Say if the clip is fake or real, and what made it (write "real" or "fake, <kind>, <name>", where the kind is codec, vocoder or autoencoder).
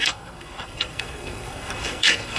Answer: fake, codec, SNAC